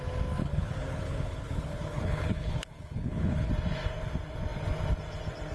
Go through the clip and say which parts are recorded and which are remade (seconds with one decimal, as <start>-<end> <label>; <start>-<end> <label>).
0.0-0.4 recorded; 0.4-3.5 remade; 3.5-5.5 recorded